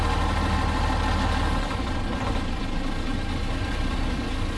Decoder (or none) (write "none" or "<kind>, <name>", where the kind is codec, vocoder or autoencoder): none